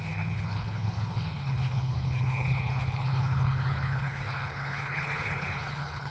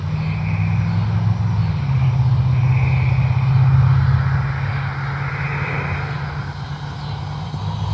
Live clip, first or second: second